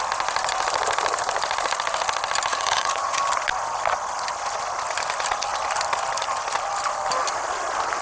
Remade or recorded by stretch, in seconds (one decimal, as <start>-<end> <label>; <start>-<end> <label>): 0.0-2.5 recorded; 2.5-3.2 remade; 3.2-8.0 recorded